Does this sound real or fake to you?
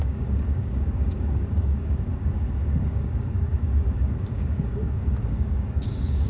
fake